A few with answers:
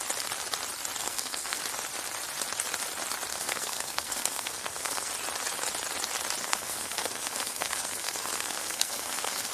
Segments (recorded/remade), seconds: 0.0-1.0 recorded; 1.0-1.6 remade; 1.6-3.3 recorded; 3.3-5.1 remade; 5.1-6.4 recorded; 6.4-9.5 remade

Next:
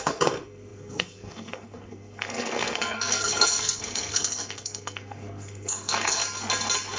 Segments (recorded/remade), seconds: 0.0-6.2 remade; 6.2-7.0 recorded

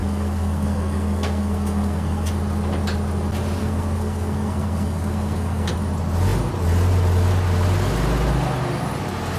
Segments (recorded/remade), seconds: 0.0-2.3 remade; 2.3-3.6 recorded; 3.6-5.7 remade; 5.7-9.4 recorded

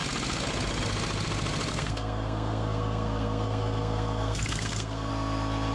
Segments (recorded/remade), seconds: 0.0-1.7 recorded; 1.7-5.1 remade; 5.1-5.7 recorded

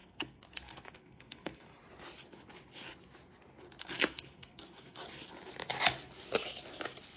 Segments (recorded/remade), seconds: 0.0-1.7 remade; 1.7-3.8 recorded; 3.8-5.0 remade; 5.0-7.2 recorded